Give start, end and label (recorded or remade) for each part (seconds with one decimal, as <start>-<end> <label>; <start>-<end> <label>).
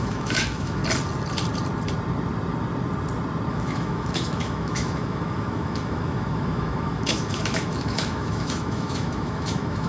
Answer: 0.0-0.8 remade; 0.8-3.5 recorded; 3.5-9.9 remade